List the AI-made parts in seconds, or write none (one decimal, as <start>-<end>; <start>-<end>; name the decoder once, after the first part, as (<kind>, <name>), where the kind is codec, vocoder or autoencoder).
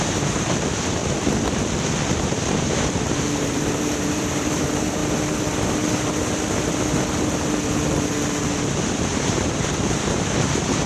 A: 0.0-1.0 (vocoder, BigVGAN v2); 2.1-5.0; 8.9-10.9